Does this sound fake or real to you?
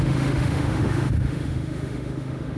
fake